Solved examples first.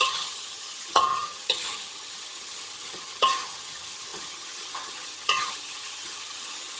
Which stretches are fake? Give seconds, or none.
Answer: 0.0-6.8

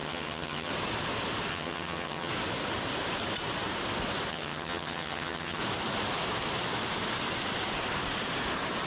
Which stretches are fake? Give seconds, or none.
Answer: 0.0-0.7; 1.5-2.3; 4.3-5.6

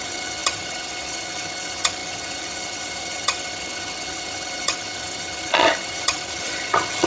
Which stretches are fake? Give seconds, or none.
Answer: 0.0-7.1

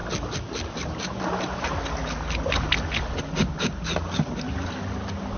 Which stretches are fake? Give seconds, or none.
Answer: none

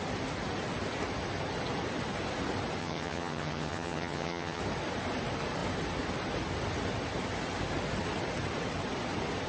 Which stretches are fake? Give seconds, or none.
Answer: 2.8-4.6